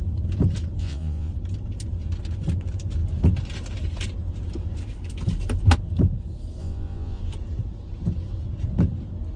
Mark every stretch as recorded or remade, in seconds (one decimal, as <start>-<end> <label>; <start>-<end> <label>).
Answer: 0.0-0.8 recorded; 0.8-1.3 remade; 1.3-6.6 recorded; 6.6-7.2 remade; 7.2-9.4 recorded